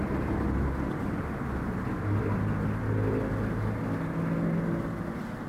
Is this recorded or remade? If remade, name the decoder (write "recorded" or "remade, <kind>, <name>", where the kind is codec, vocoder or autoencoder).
recorded